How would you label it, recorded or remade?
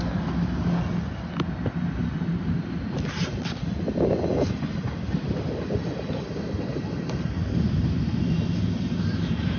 recorded